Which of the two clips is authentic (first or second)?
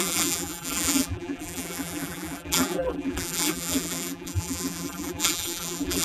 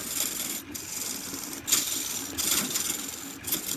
second